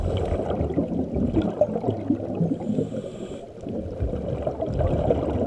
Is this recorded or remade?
recorded